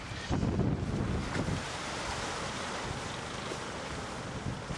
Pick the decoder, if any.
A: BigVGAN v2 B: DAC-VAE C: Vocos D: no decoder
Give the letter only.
D